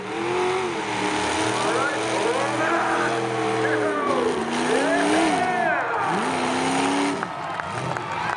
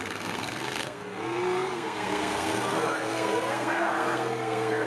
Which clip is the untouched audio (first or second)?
first